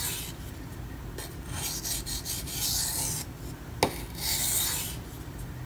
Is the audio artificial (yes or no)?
no